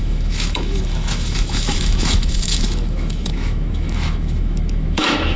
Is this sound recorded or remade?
remade